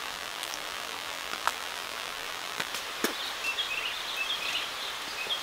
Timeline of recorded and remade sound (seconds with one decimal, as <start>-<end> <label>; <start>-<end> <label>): 0.0-2.7 remade; 2.7-5.4 recorded